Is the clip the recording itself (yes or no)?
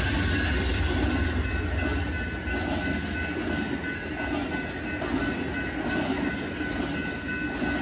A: yes